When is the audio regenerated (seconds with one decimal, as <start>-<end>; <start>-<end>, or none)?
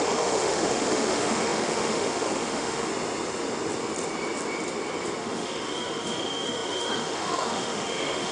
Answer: 0.0-2.9; 5.2-8.3